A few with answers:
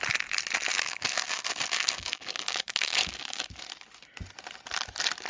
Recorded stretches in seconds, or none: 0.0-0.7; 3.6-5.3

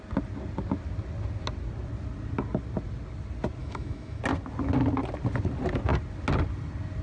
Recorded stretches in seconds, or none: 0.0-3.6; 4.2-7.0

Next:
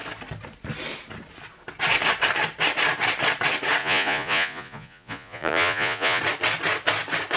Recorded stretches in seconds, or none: 0.0-3.8; 6.2-7.4

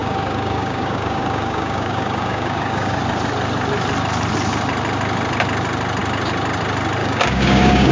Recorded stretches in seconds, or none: 3.0-7.0